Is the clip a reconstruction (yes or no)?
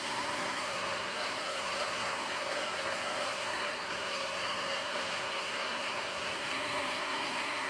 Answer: yes